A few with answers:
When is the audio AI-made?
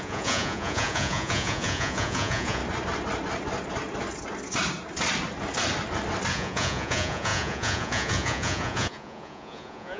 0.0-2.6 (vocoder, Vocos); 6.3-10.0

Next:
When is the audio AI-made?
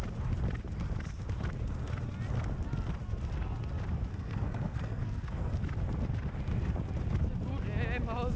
4.1-5.5 (codec, SNAC)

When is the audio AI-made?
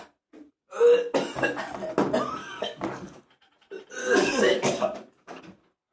2.4-3.2 (codec, DAC); 4.0-5.4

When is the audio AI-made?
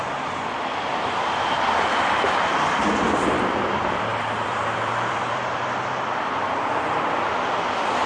0.0-8.1 (vocoder, BigVGAN v2)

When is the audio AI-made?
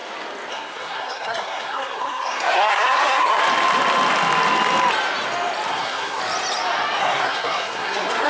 0.5-3.4 (codec, SNAC); 5.7-6.2; 7.0-8.3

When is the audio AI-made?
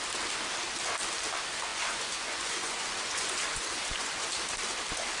1.7-4.3 (vocoder, Vocos)